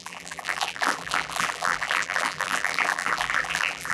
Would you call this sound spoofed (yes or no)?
yes